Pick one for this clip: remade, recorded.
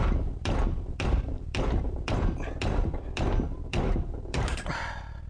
remade